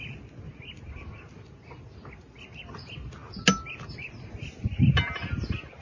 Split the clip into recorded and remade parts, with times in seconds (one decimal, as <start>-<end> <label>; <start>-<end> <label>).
0.0-5.8 recorded